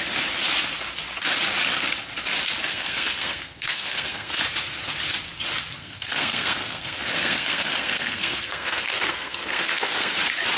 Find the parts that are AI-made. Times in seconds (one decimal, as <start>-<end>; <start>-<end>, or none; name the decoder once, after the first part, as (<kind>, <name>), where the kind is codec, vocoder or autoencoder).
2.7-4.4 (codec, SNAC); 5.8-10.1